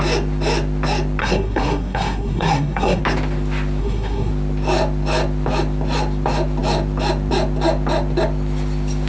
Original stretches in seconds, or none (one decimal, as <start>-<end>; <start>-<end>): 0.0-1.2; 3.0-3.8; 4.3-9.1

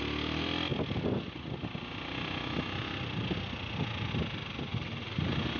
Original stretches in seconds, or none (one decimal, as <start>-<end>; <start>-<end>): 0.0-5.6

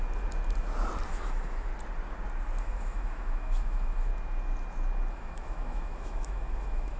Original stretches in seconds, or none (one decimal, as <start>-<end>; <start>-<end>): 0.0-1.1; 1.7-2.6; 4.1-5.1

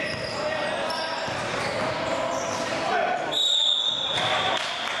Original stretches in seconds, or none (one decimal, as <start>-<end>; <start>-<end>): 0.0-1.5; 4.5-5.0